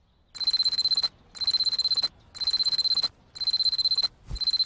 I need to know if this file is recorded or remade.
recorded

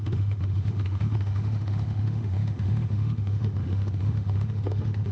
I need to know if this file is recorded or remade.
remade